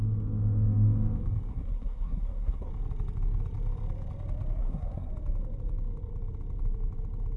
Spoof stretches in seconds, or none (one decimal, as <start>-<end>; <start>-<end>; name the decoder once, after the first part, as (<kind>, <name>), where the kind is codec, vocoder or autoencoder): 1.5-2.7 (codec, SNAC); 4.6-5.1